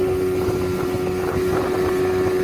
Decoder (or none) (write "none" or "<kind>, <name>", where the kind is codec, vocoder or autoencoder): none